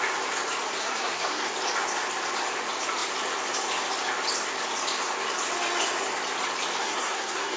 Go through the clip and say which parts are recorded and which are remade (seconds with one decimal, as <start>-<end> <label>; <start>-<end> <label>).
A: 0.0-0.8 recorded; 0.8-1.5 remade; 1.5-6.8 recorded; 6.8-7.6 remade